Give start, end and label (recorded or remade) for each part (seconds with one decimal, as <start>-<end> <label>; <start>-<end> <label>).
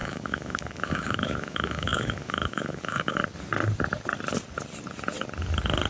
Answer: 0.0-3.2 remade; 3.2-5.9 recorded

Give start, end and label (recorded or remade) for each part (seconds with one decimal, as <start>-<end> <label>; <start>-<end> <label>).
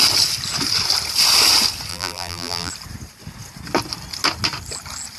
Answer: 0.0-1.9 recorded; 1.9-2.7 remade; 2.7-5.2 recorded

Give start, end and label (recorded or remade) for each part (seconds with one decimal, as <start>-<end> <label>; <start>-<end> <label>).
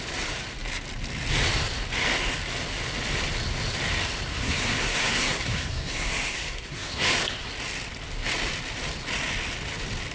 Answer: 0.0-4.3 recorded; 4.3-7.1 remade; 7.1-10.1 recorded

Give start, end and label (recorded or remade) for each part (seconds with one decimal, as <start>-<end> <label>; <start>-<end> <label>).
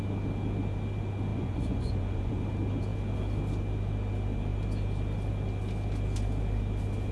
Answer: 0.0-1.3 recorded; 1.3-2.4 remade; 2.4-7.1 recorded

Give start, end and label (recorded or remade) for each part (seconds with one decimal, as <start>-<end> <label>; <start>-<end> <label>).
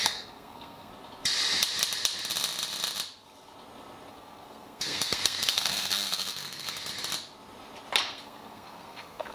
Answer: 0.0-0.9 remade; 0.9-4.1 recorded; 4.1-6.9 remade; 6.9-8.0 recorded; 8.0-9.3 remade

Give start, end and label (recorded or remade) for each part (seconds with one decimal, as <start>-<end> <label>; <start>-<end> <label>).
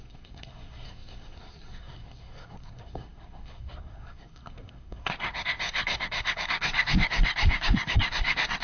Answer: 0.0-8.6 remade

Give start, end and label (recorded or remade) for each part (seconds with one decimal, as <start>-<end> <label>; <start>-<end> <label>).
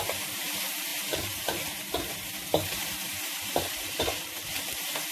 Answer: 0.0-5.1 remade